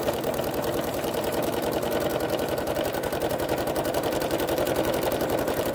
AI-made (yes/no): yes